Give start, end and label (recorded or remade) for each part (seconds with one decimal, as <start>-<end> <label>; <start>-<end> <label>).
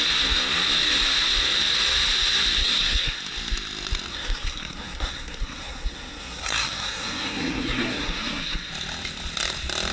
0.0-2.6 recorded; 2.6-3.2 remade; 3.2-4.1 recorded; 4.1-8.7 remade; 8.7-9.9 recorded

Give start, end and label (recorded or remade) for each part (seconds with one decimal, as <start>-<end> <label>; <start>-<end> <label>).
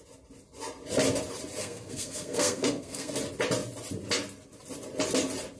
0.0-1.6 recorded; 1.6-3.1 remade; 3.1-5.6 recorded